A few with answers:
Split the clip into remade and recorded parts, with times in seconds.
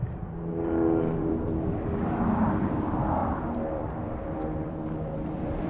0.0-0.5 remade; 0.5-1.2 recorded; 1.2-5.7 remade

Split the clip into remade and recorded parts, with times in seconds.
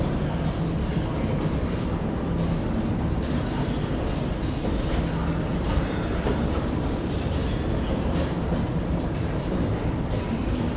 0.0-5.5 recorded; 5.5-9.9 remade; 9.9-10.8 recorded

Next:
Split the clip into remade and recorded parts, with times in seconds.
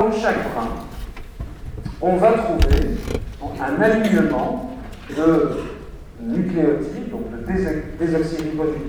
0.0-4.7 recorded; 4.7-6.1 remade; 6.1-8.9 recorded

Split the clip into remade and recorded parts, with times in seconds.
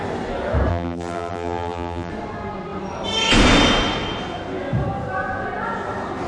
0.0-0.7 recorded; 0.7-2.1 remade; 2.1-6.3 recorded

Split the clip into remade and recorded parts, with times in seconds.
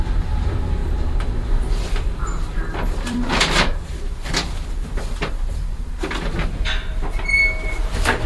0.0-0.8 remade; 0.8-1.7 recorded; 1.7-8.3 remade